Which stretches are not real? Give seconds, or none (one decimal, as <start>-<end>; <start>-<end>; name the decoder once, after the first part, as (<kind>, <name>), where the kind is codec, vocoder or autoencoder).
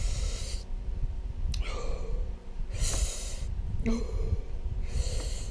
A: 2.4-4.0 (vocoder, BigVGAN v2)